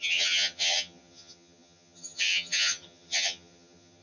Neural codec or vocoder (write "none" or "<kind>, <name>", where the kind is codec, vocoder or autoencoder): vocoder, HiFi-GAN